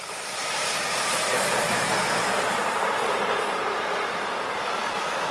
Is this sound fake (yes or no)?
yes